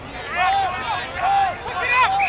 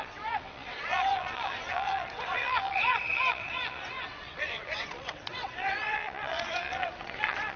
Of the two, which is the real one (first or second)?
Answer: first